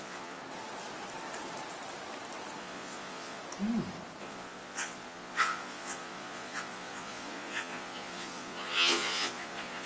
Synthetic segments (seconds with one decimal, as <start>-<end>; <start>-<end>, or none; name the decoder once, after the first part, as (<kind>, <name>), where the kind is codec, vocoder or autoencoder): 0.0-0.4 (vocoder, Vocos); 2.6-3.4; 4.2-9.9